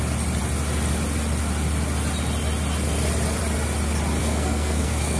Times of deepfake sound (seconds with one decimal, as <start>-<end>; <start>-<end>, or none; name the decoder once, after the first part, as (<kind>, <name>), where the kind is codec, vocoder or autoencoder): 4.2-5.2 (codec, SNAC)